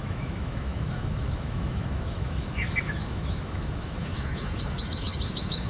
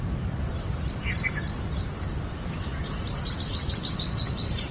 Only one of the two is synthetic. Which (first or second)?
first